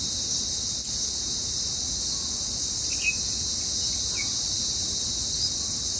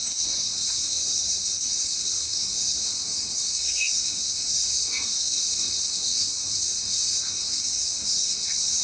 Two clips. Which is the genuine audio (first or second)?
first